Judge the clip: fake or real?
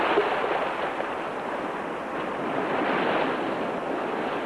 real